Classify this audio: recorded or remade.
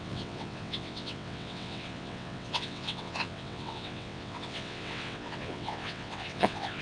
remade